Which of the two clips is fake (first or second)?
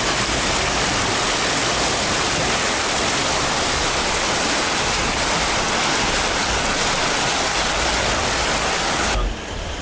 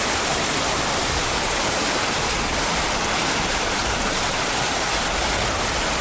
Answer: second